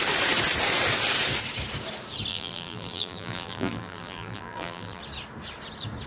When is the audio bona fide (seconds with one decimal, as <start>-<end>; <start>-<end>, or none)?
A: 0.0-2.3; 5.0-6.1